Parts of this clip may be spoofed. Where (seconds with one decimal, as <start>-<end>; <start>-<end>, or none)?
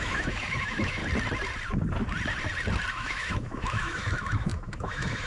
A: 0.0-1.0; 2.9-5.3